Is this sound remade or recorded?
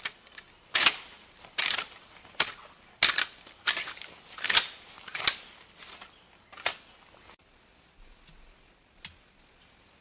recorded